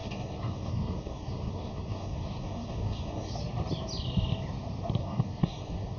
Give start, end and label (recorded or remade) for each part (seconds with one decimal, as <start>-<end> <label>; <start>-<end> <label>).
0.0-3.3 remade; 3.3-5.0 recorded; 5.0-6.0 remade